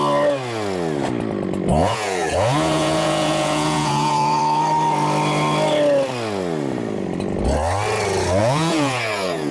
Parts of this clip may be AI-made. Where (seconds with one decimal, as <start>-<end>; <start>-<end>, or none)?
1.7-4.4; 8.4-9.5